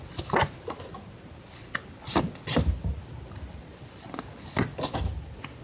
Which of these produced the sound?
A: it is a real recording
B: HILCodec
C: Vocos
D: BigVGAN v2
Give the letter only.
A